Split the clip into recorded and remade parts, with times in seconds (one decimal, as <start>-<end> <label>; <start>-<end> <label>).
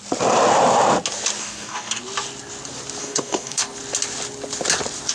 0.0-1.4 recorded; 1.4-2.0 remade; 2.0-3.0 recorded; 3.0-3.6 remade; 3.6-5.1 recorded